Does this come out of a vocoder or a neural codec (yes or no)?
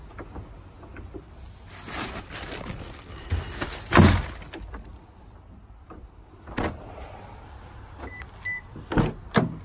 no